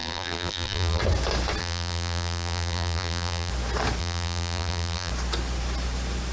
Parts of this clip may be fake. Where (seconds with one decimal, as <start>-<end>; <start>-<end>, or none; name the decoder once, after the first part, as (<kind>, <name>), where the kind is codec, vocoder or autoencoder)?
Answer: 0.0-1.0 (vocoder, BigVGAN v2); 1.6-3.5; 4.0-5.1